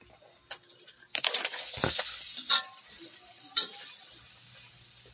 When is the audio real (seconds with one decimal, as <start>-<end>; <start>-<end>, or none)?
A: 0.0-0.7; 2.8-3.5; 4.1-5.1